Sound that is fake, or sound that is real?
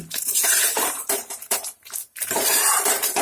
fake